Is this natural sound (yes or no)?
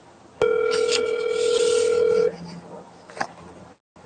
yes